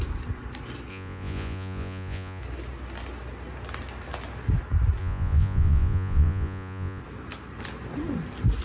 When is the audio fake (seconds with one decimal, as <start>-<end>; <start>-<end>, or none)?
0.9-2.4; 5.0-7.0